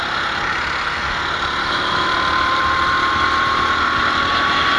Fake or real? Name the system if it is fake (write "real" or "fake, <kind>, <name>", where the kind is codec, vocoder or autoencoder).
real